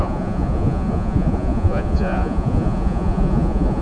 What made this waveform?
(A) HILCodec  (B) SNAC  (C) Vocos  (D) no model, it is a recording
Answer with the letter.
C